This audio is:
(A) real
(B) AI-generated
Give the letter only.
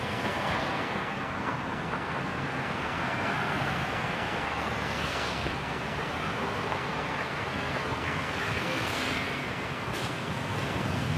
B